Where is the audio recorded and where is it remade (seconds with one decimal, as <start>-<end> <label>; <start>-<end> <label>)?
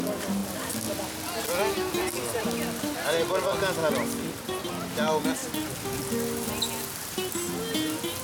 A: 0.0-3.8 recorded; 3.8-4.7 remade; 4.7-8.2 recorded